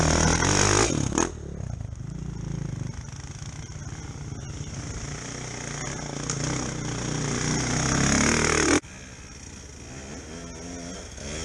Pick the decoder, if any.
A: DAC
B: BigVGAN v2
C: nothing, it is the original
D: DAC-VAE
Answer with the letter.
C